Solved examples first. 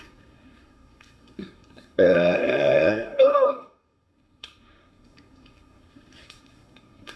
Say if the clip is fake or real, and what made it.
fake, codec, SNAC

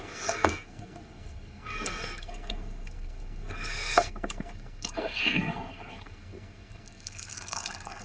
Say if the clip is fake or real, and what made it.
fake, codec, SNAC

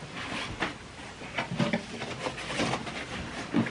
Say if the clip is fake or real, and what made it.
real